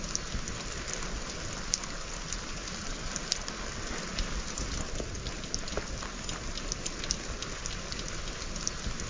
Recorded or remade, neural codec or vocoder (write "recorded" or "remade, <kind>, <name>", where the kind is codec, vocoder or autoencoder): recorded